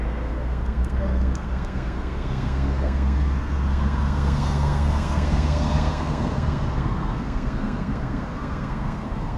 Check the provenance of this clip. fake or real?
fake